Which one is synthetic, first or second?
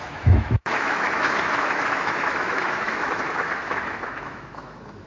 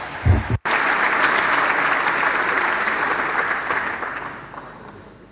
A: first